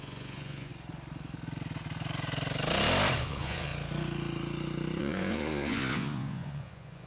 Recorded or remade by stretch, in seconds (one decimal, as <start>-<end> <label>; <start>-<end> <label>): 0.0-0.7 remade; 0.7-3.2 recorded; 3.2-3.7 remade; 3.7-5.0 recorded; 5.0-7.1 remade